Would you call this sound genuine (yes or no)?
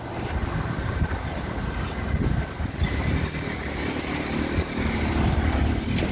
yes